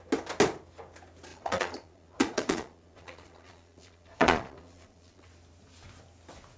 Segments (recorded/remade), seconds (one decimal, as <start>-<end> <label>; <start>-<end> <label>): 0.0-1.3 recorded; 1.3-5.3 remade; 5.3-6.6 recorded